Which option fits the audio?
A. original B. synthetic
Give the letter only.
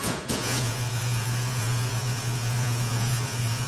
B